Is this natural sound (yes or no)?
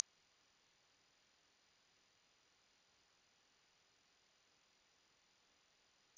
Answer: yes